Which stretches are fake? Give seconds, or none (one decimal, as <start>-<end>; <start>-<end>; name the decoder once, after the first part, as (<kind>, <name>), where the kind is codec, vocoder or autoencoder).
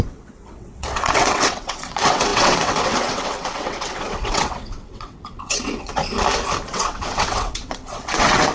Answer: 0.0-6.0 (vocoder, WaveNeXt); 6.7-8.5